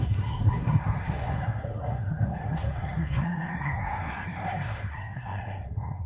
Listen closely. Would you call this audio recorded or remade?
remade